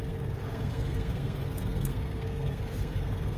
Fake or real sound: fake